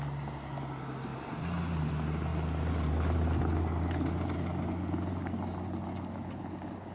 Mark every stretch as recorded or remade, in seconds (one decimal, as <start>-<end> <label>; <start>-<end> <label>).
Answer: 0.0-6.9 recorded